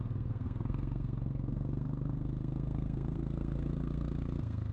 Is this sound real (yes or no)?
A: no